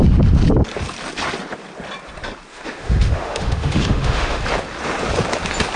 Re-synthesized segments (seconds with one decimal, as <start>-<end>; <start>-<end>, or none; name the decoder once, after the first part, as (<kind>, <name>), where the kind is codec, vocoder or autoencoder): 2.5-4.4 (autoencoder, DAC-VAE)

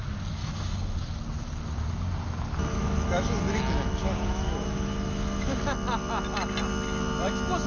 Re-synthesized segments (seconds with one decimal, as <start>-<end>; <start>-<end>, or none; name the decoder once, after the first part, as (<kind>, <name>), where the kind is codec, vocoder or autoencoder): 0.4-0.9 (autoencoder, DAC-VAE); 2.7-3.6; 4.0-5.6

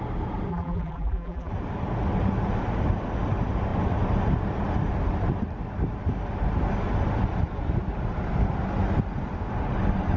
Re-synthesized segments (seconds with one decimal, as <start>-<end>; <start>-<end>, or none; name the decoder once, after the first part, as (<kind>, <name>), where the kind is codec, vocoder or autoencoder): 0.5-1.5 (vocoder, BigVGAN v2)